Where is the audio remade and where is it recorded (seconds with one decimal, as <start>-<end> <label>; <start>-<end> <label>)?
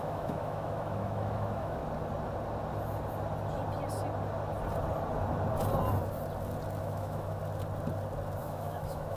0.0-1.8 remade; 1.8-6.8 recorded; 6.8-7.4 remade; 7.4-8.4 recorded; 8.4-9.2 remade